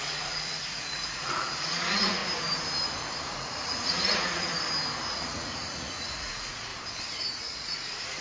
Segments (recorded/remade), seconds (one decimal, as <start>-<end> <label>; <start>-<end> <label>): 0.0-2.2 remade; 2.2-3.3 recorded; 3.3-4.5 remade; 4.5-5.1 recorded; 5.1-6.7 remade; 6.7-7.3 recorded; 7.3-8.2 remade